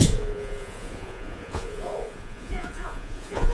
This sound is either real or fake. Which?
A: fake